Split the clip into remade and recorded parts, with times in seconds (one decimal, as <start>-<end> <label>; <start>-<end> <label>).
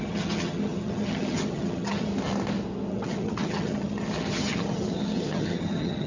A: 0.0-2.1 remade; 2.1-2.9 recorded; 2.9-6.1 remade